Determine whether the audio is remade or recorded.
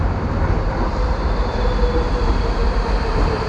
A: remade